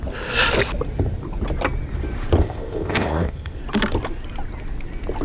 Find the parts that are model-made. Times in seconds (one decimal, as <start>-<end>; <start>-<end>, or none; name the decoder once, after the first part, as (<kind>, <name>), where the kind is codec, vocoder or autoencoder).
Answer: 2.4-3.6 (codec, ZipCodec)

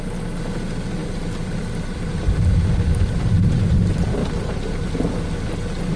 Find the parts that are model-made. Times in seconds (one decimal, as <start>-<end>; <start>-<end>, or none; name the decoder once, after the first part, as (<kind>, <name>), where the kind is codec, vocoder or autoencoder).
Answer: 1.0-2.1 (vocoder, BigVGAN v2); 4.2-4.9

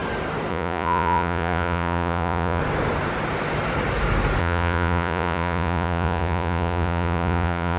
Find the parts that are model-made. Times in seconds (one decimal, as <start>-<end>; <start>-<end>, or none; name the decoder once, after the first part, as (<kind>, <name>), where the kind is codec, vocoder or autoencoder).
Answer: 0.5-2.6 (vocoder, Vocos); 4.4-7.8

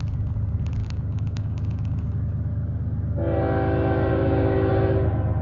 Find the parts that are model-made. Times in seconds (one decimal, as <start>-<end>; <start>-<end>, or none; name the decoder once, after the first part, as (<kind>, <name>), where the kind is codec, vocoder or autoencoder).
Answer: 0.8-2.2 (codec, DAC); 4.1-4.7

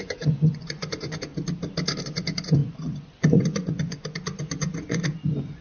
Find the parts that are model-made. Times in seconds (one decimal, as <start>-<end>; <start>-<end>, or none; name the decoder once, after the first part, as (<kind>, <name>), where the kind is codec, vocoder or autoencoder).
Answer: 0.0-1.3 (vocoder, Vocos); 2.0-5.6

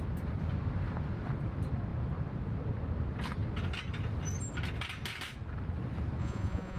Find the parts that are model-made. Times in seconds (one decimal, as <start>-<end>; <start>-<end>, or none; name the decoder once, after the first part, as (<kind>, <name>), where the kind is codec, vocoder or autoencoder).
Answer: 6.2-6.8 (vocoder, Vocos)

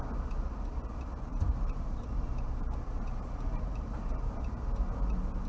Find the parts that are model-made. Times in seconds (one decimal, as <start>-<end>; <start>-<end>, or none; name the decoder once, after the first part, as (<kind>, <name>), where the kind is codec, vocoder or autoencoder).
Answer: 1.3-4.6 (vocoder, BigVGAN v2)

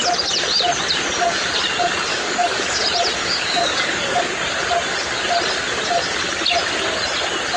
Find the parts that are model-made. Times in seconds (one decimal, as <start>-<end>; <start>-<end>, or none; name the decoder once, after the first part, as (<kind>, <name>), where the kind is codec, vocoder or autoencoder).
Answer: 2.1-2.8 (codec, DAC); 3.2-4.2